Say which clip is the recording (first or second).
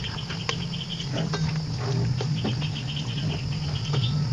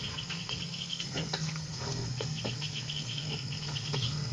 first